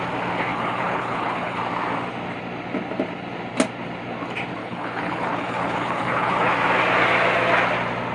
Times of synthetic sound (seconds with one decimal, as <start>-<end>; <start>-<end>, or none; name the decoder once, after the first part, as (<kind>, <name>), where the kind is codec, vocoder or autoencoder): 0.5-1.6 (codec, HILCodec); 4.6-6.5